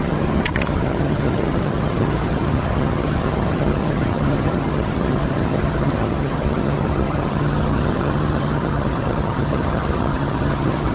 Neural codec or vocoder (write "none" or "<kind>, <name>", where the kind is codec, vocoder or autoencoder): vocoder, HiFi-GAN